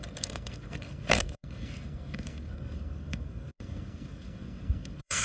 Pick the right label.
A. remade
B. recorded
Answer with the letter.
A